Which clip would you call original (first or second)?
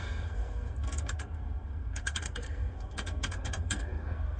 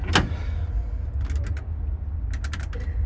second